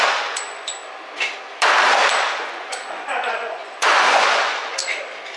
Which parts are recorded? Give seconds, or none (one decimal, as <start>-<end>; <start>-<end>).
0.8-2.4; 4.8-5.4